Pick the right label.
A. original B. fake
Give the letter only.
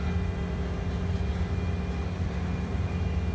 A